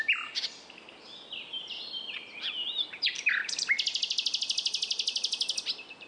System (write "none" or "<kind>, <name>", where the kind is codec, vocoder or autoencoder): vocoder, BigVGAN v2